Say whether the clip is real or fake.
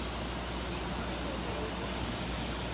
real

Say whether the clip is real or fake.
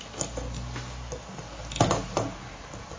real